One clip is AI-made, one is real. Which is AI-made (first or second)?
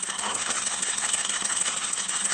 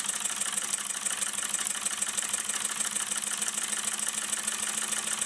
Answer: first